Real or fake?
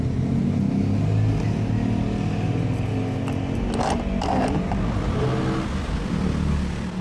real